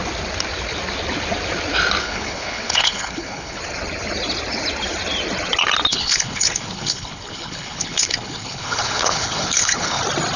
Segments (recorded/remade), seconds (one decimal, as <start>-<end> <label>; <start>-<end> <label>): 0.0-2.0 recorded; 2.0-3.6 remade; 3.6-5.9 recorded; 5.9-10.0 remade; 10.0-10.4 recorded